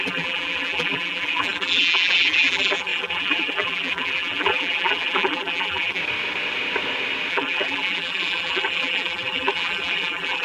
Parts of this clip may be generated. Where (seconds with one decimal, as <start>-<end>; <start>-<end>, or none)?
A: 0.0-6.0; 7.3-10.4